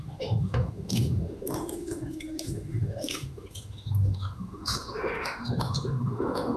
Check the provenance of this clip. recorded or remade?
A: remade